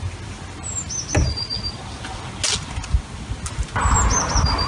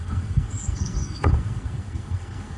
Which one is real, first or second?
first